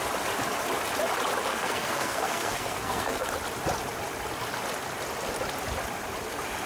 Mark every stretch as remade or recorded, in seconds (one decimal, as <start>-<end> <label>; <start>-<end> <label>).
0.0-1.5 recorded; 1.5-3.3 remade; 3.3-6.7 recorded